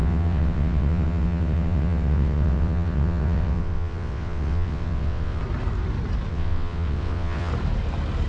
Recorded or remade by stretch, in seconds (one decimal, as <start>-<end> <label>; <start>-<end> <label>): 0.0-5.4 remade; 5.4-6.3 recorded; 6.3-7.5 remade; 7.5-8.3 recorded